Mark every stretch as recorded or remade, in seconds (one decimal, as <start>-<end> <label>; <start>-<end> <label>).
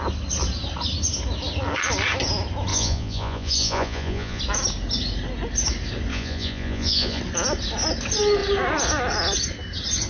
0.0-2.7 recorded; 2.7-4.4 remade; 4.4-6.1 recorded; 6.1-7.2 remade; 7.2-10.1 recorded